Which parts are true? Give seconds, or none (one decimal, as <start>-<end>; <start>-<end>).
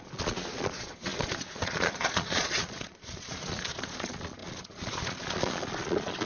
none